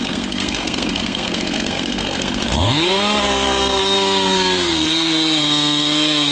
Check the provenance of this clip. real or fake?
fake